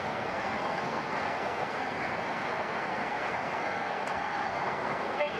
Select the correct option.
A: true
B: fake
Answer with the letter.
B